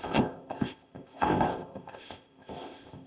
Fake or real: fake